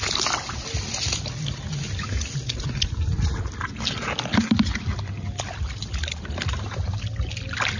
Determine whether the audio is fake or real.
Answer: real